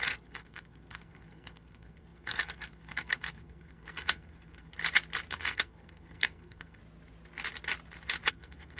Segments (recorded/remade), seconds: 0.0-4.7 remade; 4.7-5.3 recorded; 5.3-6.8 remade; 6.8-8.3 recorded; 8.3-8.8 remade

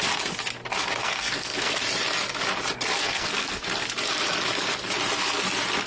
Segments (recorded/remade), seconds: 0.0-1.0 recorded; 1.0-1.8 remade; 1.8-3.0 recorded; 3.0-3.6 remade; 3.6-5.9 recorded

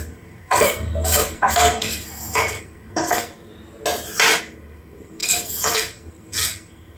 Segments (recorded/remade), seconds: 0.0-3.5 remade; 3.5-4.4 recorded; 4.4-7.0 remade

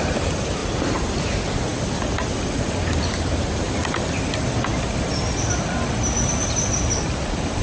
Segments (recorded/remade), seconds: 0.0-7.6 recorded

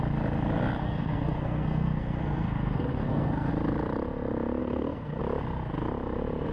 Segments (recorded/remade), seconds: 0.0-0.8 recorded; 0.8-3.5 remade; 3.5-4.6 recorded; 4.6-5.2 remade; 5.2-6.5 recorded

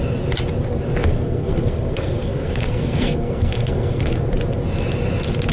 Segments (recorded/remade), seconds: 0.0-1.0 recorded; 1.0-4.3 remade; 4.3-5.5 recorded